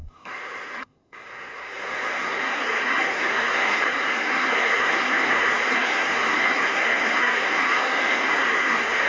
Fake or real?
fake